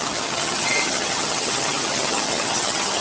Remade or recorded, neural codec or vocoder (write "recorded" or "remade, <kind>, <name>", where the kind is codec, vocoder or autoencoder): remade, vocoder, HiFi-GAN